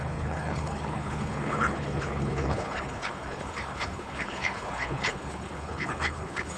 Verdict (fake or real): fake